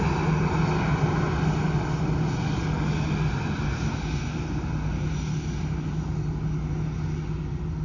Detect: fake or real real